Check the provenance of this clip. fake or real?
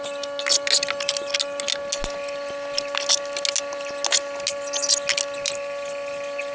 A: real